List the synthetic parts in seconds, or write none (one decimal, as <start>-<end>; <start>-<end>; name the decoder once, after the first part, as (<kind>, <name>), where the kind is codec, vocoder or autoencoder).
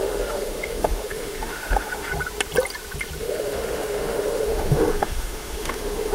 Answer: 0.0-2.1 (autoencoder, DAC-VAE); 3.2-6.1